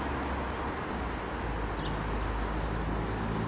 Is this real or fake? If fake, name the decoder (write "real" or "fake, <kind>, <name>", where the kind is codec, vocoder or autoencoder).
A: real